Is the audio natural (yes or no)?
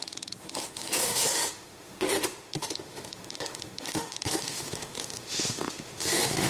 no